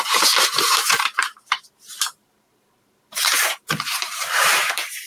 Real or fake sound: fake